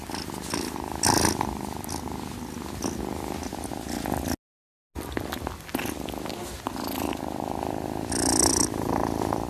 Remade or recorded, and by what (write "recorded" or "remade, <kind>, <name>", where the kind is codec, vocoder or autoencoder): recorded